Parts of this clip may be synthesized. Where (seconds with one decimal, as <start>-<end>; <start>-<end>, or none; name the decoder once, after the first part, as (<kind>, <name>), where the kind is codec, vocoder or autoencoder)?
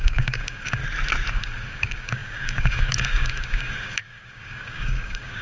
0.0-0.8 (codec, DAC); 1.3-5.4